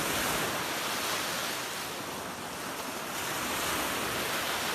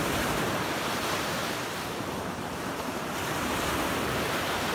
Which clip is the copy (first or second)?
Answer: second